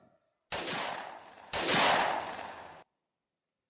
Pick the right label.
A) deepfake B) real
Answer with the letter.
B